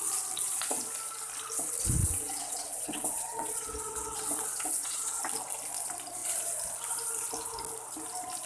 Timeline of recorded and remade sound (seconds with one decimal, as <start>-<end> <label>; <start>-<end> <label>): 0.0-2.0 recorded; 2.0-5.2 remade; 5.2-8.5 recorded